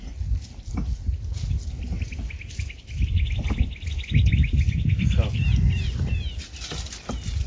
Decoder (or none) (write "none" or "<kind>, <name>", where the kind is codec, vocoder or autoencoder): none